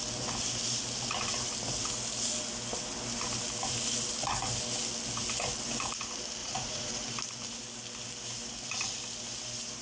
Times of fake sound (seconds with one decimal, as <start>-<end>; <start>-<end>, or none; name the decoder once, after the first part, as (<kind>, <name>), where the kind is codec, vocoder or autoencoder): 6.4-6.9 (vocoder, Vocos)